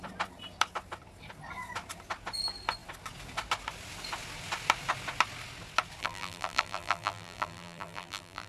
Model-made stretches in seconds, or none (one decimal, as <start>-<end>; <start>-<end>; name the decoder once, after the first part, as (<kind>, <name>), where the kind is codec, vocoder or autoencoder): 6.0-8.5 (vocoder, BigVGAN v2)